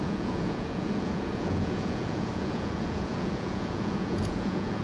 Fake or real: fake